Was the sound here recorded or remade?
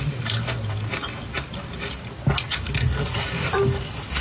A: recorded